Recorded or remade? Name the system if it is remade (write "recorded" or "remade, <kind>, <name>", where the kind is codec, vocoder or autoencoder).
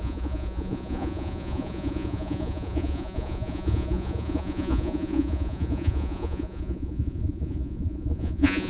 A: remade, vocoder, Vocos